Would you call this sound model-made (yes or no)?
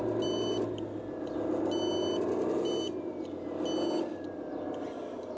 no